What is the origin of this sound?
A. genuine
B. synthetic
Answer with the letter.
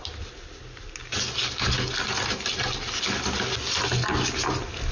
A